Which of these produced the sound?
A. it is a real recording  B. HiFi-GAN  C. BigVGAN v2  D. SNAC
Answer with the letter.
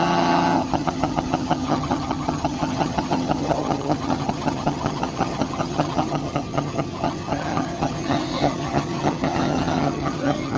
B